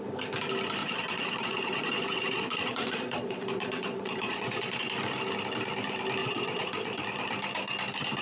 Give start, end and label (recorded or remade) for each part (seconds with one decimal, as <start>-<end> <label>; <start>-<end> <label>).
0.0-0.8 recorded; 0.8-4.8 remade; 4.8-6.2 recorded; 6.2-7.0 remade; 7.0-8.2 recorded